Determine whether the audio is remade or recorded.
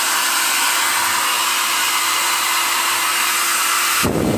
recorded